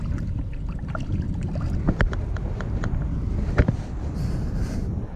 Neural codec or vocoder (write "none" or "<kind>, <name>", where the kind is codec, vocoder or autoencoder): vocoder, BigVGAN v2